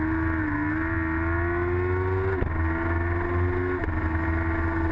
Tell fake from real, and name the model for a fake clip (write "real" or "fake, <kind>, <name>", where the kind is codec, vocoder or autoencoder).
real